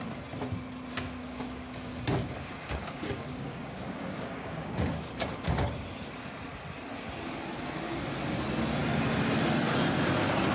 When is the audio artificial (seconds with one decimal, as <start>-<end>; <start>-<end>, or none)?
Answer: 0.9-5.5